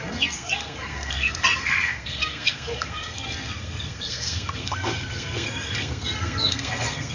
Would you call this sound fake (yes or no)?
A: yes